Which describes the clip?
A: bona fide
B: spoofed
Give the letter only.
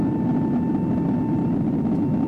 A